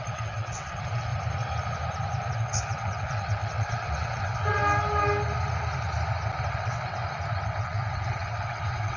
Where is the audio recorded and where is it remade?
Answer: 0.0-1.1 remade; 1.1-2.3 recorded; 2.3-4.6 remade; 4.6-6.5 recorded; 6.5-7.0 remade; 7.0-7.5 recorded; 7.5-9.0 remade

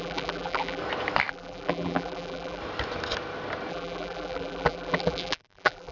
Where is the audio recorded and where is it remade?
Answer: 0.0-0.8 remade; 0.8-1.3 recorded; 1.3-2.6 remade; 2.6-3.7 recorded; 3.7-5.9 remade

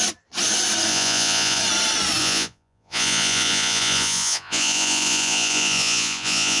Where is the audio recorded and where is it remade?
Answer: 0.0-0.9 recorded; 0.9-1.6 remade; 1.6-2.2 recorded; 2.2-6.6 remade

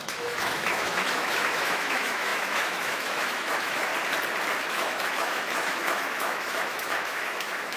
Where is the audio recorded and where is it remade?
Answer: 0.0-3.9 remade; 3.9-4.7 recorded; 4.7-7.8 remade

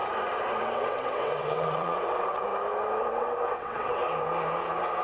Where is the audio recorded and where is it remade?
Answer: 0.0-0.6 recorded; 0.6-2.5 remade; 2.5-3.0 recorded; 3.0-4.0 remade; 4.0-5.0 recorded